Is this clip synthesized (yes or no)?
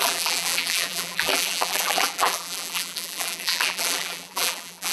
yes